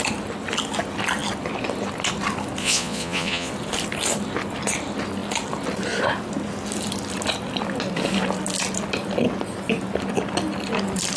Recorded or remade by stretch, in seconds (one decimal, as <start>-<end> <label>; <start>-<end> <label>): 0.0-2.6 recorded; 2.6-3.5 remade; 3.5-11.2 recorded